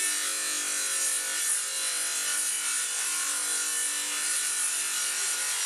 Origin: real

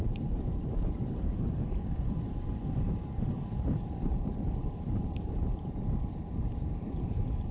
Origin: fake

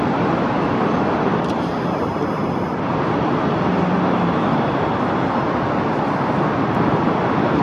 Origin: real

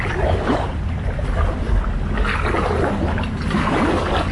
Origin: real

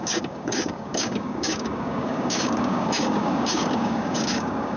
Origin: fake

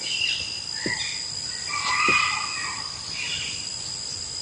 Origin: real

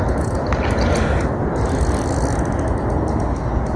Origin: real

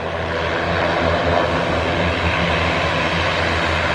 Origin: real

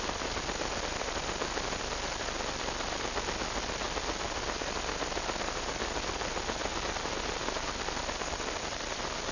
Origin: real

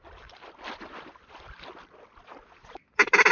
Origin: fake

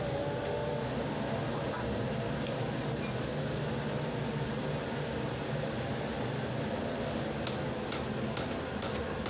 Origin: real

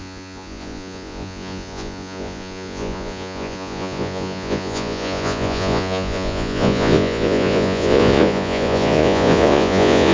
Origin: fake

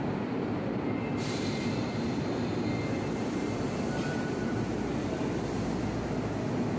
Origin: real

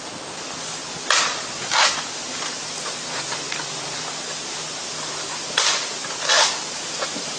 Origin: real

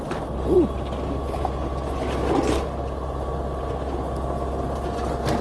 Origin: real